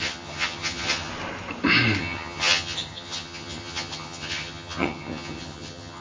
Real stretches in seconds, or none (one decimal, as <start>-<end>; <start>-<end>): 1.1-2.0